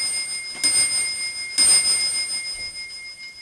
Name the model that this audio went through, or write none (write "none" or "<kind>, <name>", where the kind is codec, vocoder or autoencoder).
none